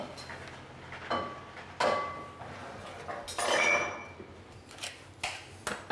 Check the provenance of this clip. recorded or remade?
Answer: recorded